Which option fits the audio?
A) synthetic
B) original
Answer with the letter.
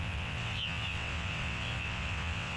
A